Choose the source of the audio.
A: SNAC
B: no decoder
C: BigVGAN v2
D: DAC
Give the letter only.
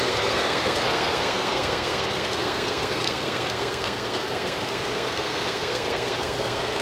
A